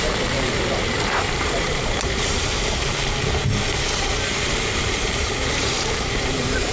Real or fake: fake